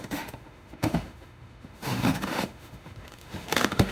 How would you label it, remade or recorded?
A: remade